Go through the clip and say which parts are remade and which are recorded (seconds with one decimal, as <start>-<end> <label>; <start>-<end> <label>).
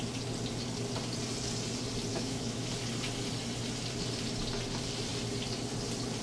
0.0-2.1 recorded; 2.1-2.7 remade; 2.7-6.2 recorded